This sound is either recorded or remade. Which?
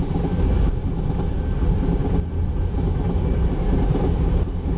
recorded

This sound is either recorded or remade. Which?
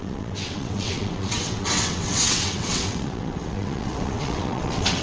remade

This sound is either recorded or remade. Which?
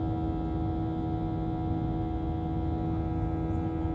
recorded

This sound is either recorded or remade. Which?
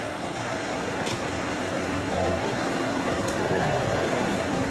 remade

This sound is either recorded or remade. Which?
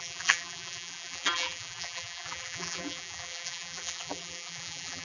remade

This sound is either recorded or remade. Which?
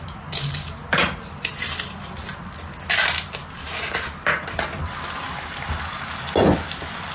remade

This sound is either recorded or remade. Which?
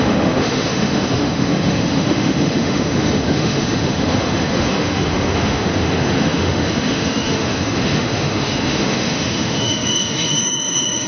remade